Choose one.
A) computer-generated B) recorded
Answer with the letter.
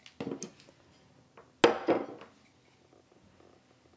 B